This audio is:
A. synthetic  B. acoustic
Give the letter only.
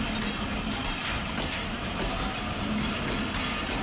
B